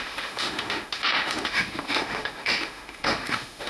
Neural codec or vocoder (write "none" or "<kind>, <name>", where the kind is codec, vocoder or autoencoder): autoencoder, DAC-VAE